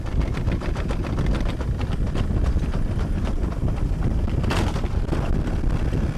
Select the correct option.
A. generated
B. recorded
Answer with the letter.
B